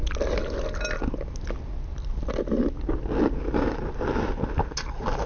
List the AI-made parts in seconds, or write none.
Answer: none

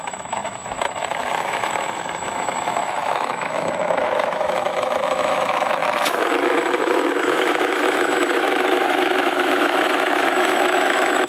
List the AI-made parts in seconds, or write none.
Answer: 0.0-11.3 (autoencoder, DAC-VAE)

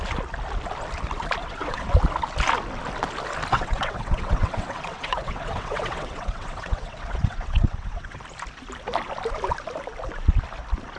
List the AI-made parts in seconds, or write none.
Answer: 1.4-1.9 (vocoder, WaveNeXt); 3.5-8.2

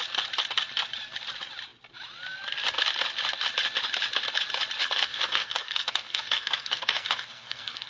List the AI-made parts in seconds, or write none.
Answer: 4.8-7.9 (codec, SNAC)

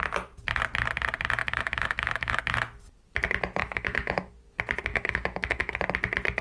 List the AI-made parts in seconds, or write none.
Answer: 1.4-2.4 (autoencoder, DAC-VAE); 3.6-4.3; 4.9-5.8

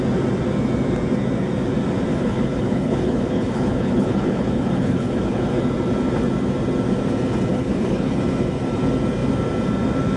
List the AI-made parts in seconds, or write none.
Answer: 2.1-5.6 (codec, HILCodec); 7.5-8.2